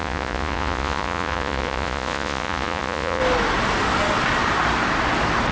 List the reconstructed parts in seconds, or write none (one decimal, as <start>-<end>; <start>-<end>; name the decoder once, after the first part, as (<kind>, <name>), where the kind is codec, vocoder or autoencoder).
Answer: 0.0-3.2 (vocoder, Vocos)